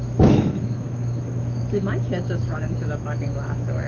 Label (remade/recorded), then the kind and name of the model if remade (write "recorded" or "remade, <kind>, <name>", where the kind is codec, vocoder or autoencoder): remade, autoencoder, DAC-VAE